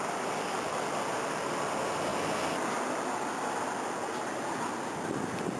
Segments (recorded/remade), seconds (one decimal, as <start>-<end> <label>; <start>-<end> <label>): 0.0-5.6 remade